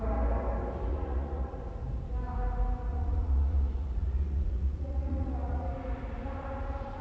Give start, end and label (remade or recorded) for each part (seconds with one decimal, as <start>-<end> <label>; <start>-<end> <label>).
0.0-0.9 recorded; 0.9-1.6 remade; 1.6-2.9 recorded; 2.9-5.7 remade; 5.7-7.0 recorded